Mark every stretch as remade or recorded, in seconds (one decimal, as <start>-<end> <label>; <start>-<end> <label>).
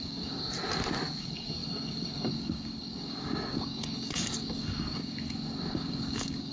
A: 0.0-0.4 remade; 0.4-1.2 recorded; 1.2-6.5 remade